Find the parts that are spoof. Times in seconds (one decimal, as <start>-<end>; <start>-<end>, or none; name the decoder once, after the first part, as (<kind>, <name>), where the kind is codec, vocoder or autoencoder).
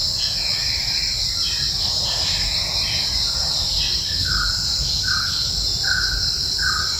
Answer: none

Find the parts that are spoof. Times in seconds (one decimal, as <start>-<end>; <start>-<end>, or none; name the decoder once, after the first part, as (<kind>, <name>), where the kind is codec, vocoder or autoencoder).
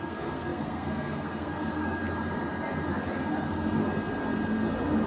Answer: 0.0-2.0 (codec, SNAC)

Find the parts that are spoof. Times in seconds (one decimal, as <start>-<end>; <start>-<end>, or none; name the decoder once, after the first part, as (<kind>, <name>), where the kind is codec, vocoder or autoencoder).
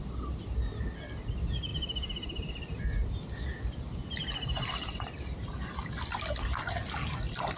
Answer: none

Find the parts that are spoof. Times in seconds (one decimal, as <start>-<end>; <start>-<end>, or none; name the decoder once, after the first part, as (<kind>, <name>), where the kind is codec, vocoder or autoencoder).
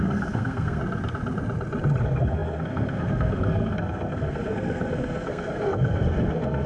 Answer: 0.0-0.8 (codec, SNAC); 2.0-6.7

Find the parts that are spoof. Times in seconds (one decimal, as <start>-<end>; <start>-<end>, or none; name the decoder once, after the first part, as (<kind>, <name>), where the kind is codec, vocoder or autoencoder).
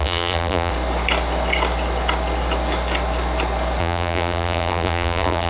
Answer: 0.0-0.7 (vocoder, BigVGAN v2); 3.8-5.5